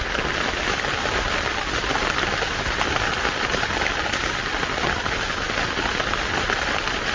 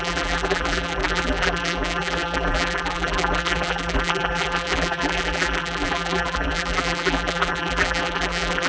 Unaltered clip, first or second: first